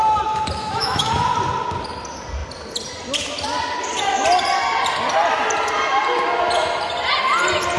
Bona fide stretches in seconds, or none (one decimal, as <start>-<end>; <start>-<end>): 0.0-0.6; 1.1-7.8